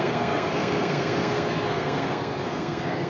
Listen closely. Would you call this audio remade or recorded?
remade